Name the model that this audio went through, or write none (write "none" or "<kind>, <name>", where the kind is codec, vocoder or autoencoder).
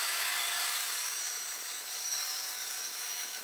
codec, DAC